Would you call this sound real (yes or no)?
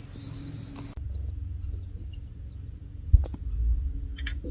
yes